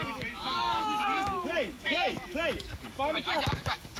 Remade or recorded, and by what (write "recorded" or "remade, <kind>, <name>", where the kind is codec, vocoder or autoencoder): remade, codec, DAC